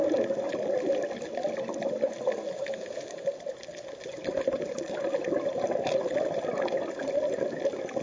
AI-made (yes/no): no